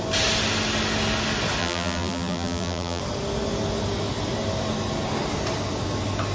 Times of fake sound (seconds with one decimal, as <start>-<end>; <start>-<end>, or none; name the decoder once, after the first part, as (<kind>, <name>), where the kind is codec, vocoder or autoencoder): 1.6-3.0 (vocoder, BigVGAN v2)